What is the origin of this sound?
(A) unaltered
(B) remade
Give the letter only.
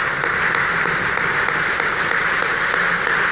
A